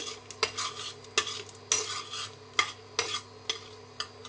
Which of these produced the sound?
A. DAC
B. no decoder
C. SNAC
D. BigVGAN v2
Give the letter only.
B